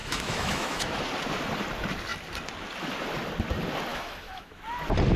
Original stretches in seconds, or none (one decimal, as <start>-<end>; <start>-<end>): 1.0-3.9; 4.6-5.2